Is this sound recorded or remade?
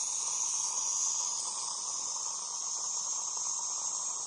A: recorded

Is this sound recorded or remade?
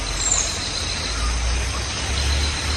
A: recorded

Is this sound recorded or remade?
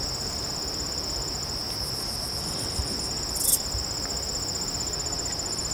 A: recorded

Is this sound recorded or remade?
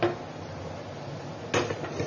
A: recorded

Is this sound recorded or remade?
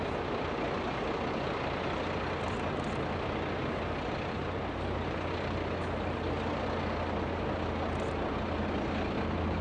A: recorded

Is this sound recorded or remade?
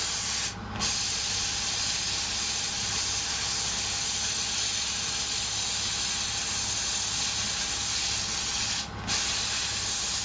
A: recorded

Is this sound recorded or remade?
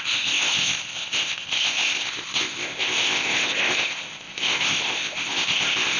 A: remade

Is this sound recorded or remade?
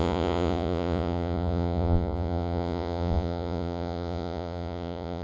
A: remade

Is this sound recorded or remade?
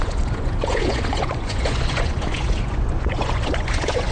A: remade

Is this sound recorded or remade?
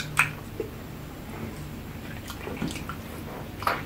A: recorded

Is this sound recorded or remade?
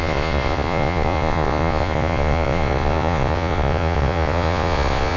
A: remade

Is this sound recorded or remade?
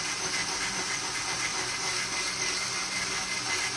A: recorded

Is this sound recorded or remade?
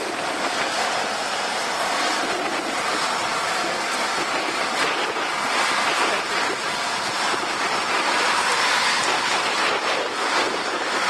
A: recorded